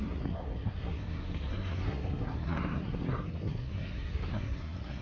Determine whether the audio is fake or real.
fake